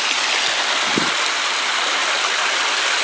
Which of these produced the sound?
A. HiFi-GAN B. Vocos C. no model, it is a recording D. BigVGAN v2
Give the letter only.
C